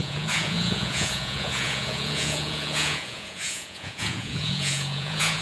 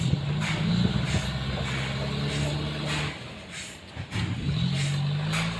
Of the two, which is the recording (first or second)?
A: second